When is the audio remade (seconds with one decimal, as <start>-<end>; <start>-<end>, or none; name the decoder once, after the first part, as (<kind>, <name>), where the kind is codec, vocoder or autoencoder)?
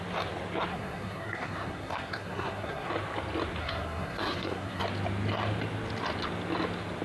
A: 0.7-2.9 (codec, SNAC); 3.6-4.8